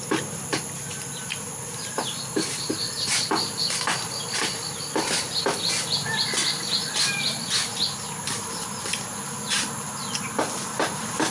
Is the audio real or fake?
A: real